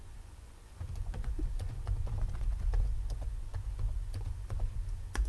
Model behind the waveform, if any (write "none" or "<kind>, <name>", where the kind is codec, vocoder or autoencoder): vocoder, Vocos